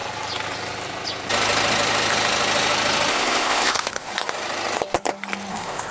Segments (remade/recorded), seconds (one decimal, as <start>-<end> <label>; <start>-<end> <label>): 0.0-3.1 recorded; 3.1-4.1 remade; 4.1-5.5 recorded; 5.5-5.9 remade